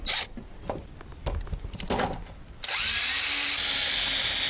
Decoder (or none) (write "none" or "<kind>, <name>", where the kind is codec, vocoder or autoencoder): none